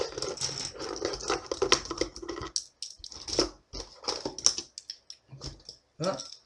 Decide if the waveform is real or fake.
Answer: real